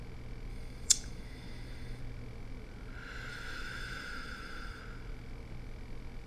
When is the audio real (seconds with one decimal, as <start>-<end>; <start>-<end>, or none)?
0.0-0.5; 2.0-3.3; 4.8-6.3

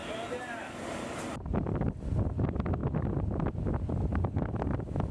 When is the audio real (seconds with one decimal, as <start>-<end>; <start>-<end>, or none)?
0.0-5.1

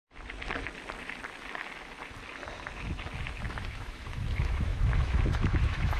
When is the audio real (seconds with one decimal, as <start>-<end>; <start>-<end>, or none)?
0.0-3.6

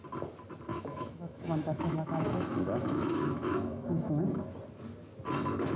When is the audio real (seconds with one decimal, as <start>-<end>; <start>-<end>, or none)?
0.0-0.7; 4.2-5.8

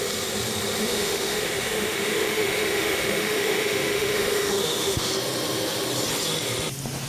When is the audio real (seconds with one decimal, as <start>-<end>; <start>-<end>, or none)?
0.0-0.8; 5.1-7.1

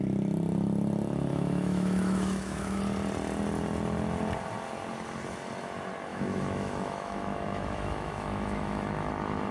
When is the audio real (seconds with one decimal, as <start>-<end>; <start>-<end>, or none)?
0.0-1.3; 2.8-6.1; 9.1-9.5